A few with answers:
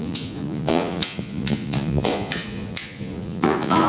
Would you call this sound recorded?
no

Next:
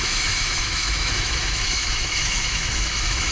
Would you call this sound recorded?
no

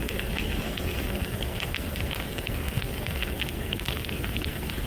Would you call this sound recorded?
no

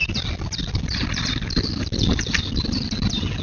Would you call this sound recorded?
yes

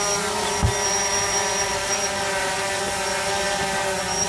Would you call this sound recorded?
yes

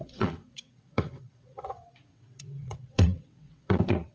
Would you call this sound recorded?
no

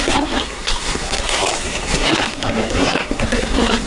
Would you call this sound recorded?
no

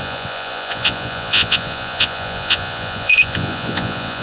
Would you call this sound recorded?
no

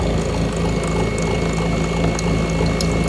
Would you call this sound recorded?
yes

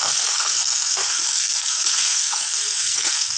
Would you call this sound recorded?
no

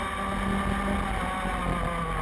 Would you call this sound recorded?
yes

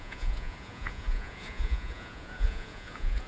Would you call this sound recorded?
no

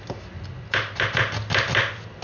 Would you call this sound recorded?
yes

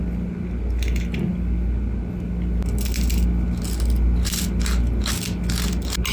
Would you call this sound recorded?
yes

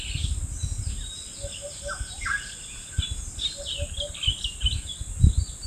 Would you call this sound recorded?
yes